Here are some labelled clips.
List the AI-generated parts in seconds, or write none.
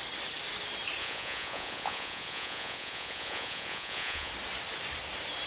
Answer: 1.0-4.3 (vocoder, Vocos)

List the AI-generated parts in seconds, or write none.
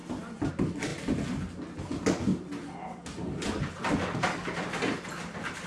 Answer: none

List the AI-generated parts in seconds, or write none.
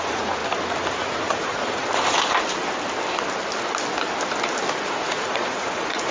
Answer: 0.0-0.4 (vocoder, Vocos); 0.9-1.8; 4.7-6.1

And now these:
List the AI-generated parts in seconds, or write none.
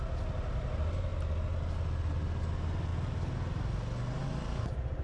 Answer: none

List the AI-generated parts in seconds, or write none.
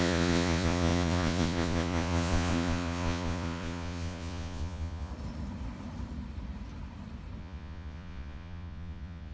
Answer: 0.0-5.1 (vocoder, Vocos); 7.4-9.3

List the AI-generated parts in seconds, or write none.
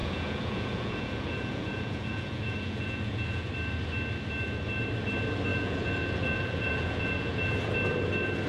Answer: 0.0-3.5 (vocoder, Vocos); 5.5-7.5